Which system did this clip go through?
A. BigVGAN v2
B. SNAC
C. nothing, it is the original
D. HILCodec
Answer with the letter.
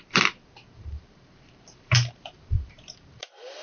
A